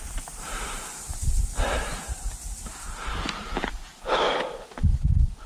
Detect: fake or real fake